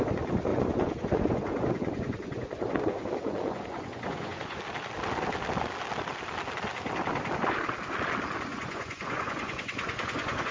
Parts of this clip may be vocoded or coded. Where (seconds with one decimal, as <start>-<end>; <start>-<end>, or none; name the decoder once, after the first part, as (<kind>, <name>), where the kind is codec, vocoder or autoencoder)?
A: 0.5-4.6 (vocoder, Vocos); 8.5-10.5